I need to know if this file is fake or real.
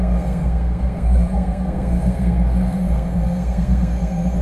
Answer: fake